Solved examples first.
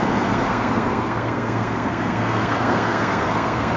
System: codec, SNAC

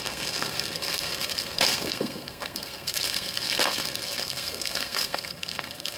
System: codec, SNAC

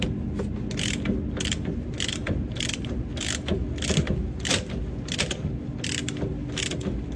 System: none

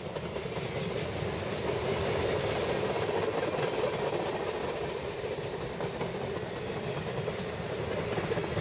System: none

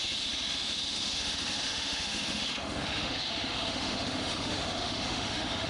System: autoencoder, DAC-VAE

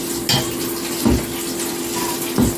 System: none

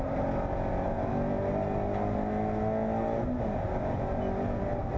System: none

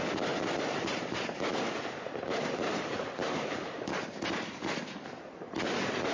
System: none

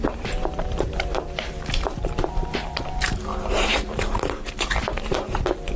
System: vocoder, BigVGAN v2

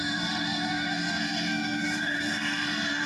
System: autoencoder, DAC-VAE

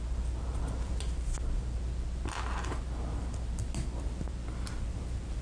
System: none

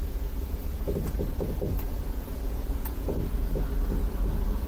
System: vocoder, Vocos